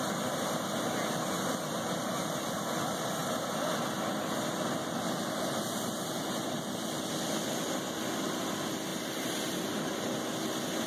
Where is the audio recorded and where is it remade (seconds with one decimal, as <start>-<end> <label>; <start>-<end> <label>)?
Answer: 0.0-8.9 recorded; 8.9-9.7 remade; 9.7-10.9 recorded